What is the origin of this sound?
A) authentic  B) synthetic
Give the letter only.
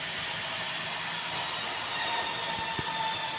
A